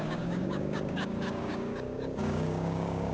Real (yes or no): no